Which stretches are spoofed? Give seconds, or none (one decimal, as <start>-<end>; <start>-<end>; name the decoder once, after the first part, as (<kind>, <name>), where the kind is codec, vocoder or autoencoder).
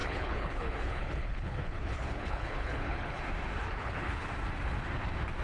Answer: 0.0-3.2 (codec, HILCodec); 3.6-4.3